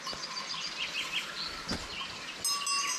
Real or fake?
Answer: real